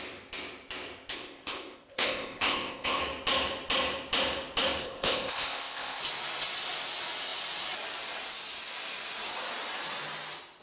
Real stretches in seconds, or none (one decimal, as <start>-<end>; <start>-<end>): 0.0-1.1; 3.0-4.8; 6.0-10.6